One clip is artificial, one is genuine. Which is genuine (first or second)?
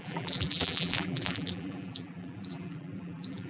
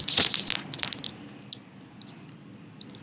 second